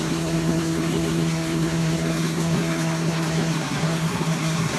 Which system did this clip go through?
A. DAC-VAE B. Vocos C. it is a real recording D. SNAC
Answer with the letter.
D